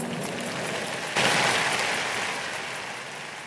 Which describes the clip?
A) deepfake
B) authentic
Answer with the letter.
B